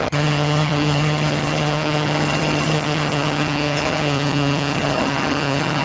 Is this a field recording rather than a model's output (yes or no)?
no